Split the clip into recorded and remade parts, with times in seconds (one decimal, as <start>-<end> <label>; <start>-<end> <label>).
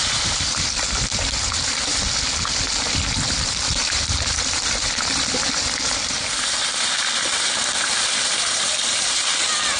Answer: 0.0-2.0 remade; 2.0-2.9 recorded; 2.9-9.8 remade